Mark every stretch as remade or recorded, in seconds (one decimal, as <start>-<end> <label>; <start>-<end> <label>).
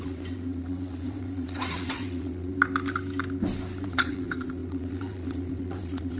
0.0-2.5 remade; 2.5-3.8 recorded; 3.8-6.2 remade